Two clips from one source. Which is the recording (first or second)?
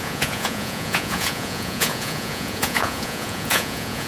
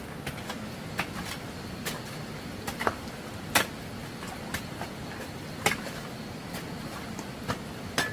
second